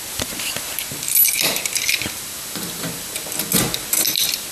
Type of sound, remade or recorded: recorded